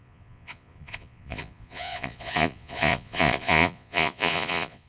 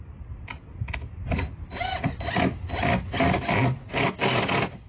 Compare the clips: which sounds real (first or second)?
second